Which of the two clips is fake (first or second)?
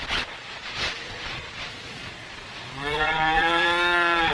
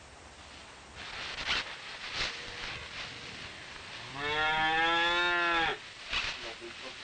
first